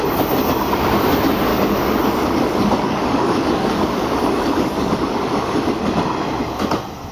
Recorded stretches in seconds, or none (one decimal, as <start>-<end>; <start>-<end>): 0.0-1.5; 5.8-7.1